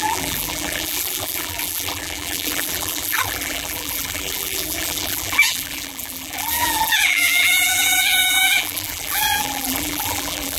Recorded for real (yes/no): no